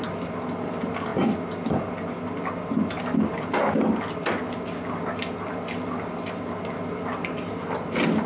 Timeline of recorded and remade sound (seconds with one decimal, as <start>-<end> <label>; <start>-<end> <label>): 0.0-8.3 recorded